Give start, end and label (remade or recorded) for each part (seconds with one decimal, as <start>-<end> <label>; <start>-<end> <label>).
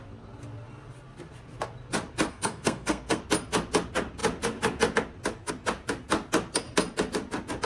0.0-2.3 recorded; 2.3-3.2 remade; 3.2-7.7 recorded